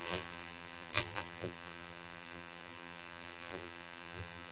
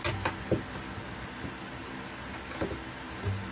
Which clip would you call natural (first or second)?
second